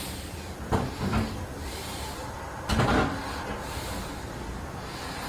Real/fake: real